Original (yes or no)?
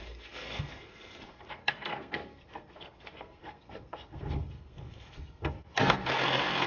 no